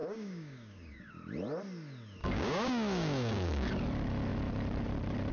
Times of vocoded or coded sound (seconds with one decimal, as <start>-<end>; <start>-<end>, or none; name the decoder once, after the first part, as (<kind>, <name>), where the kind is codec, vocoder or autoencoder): 0.0-1.1 (codec, DAC); 2.2-3.7